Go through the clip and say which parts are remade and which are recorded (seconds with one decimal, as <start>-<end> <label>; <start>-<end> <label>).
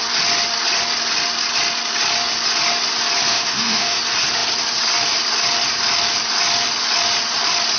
0.0-3.3 recorded; 3.3-4.0 remade; 4.0-7.8 recorded